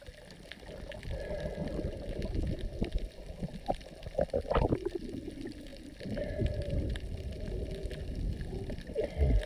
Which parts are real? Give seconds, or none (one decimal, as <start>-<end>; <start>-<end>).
0.0-9.5